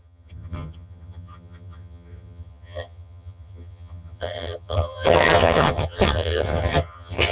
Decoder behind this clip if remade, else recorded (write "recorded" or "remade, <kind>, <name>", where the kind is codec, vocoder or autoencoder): remade, vocoder, HiFi-GAN